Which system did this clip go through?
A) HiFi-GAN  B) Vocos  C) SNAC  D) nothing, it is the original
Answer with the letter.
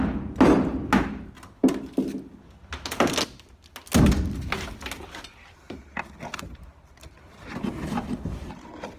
D